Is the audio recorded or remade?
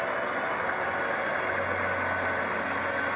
recorded